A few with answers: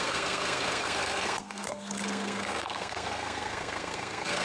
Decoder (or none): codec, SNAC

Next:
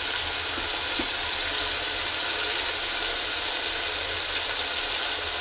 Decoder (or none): none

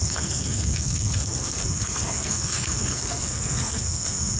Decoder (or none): codec, SNAC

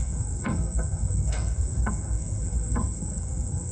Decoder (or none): codec, SNAC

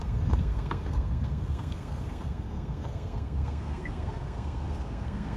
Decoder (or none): codec, SNAC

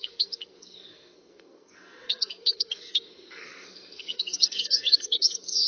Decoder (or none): codec, SNAC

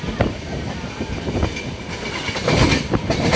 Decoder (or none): none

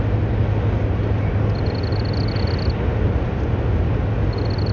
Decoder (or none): none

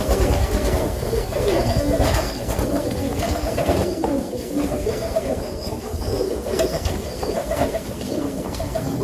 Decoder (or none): codec, SNAC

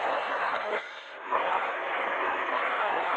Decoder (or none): codec, SNAC